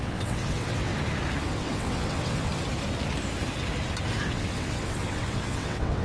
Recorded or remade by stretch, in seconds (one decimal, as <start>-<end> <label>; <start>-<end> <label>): 0.0-0.9 remade; 0.9-1.5 recorded; 1.5-2.5 remade; 2.5-4.2 recorded; 4.2-6.0 remade